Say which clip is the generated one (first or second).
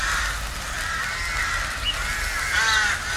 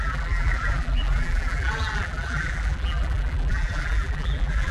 second